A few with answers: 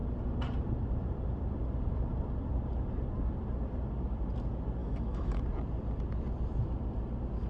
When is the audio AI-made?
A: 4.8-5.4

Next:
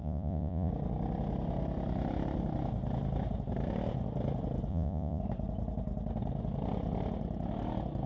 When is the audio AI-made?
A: 0.0-0.7; 4.7-5.2

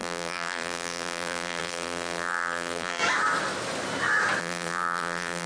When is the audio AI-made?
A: 0.0-3.0; 4.4-5.5

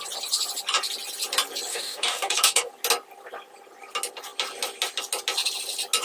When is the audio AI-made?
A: 1.7-2.7

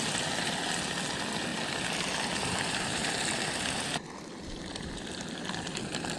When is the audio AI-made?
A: 1.5-5.2